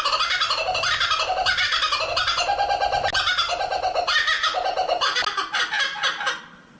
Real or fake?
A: real